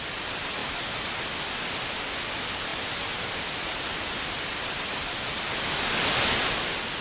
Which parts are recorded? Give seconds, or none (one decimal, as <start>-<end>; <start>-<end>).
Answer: 0.0-2.7; 6.2-7.0